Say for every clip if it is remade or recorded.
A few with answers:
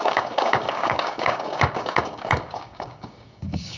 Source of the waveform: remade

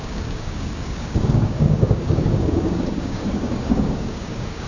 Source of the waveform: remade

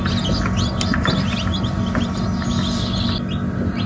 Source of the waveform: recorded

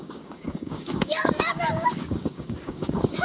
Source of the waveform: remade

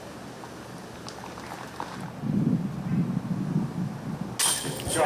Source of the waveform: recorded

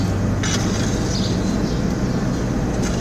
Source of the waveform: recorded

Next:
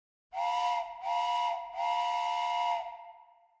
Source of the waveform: recorded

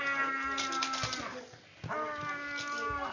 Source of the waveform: recorded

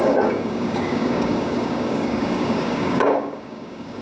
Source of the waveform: remade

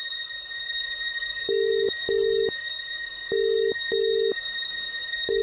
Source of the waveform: remade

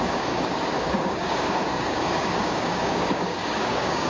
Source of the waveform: remade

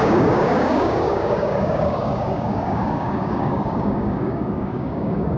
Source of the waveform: remade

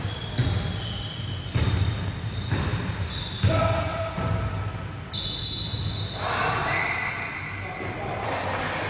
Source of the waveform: recorded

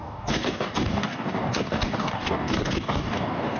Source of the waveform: remade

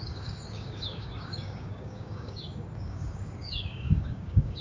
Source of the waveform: remade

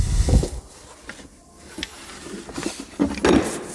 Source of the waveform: recorded